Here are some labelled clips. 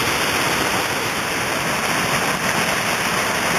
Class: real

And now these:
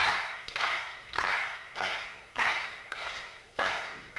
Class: fake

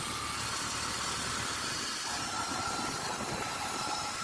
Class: real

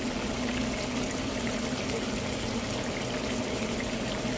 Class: fake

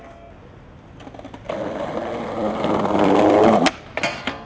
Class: real